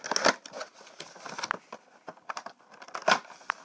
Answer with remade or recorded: recorded